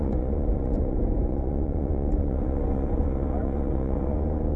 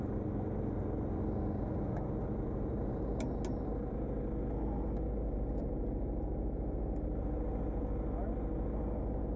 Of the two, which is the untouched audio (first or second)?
second